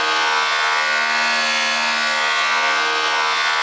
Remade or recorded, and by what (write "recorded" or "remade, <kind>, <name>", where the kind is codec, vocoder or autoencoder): recorded